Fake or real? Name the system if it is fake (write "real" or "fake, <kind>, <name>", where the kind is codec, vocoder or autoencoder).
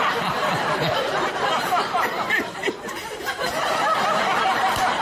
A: fake, vocoder, BigVGAN v2